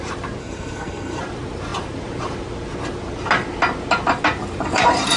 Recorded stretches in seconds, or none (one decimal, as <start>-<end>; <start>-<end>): 0.0-0.4; 1.2-5.2